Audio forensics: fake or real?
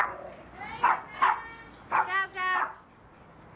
real